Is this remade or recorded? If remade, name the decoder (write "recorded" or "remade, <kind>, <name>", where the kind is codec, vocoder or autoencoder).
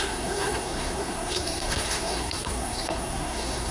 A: remade, codec, SNAC